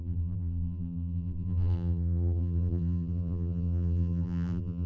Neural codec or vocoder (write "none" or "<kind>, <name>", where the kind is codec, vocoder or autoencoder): vocoder, BigVGAN v2